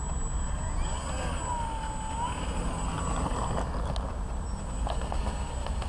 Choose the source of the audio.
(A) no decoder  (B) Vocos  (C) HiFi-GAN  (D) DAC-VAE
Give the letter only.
A